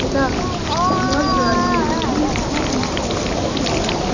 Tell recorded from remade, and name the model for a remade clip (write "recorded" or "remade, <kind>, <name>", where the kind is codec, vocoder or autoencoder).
recorded